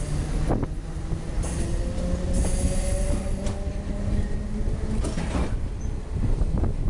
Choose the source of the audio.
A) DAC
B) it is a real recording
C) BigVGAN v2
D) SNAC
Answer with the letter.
B